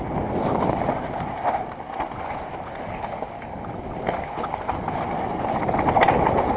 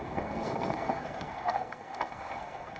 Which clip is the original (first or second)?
first